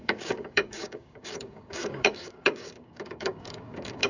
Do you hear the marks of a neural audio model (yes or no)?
yes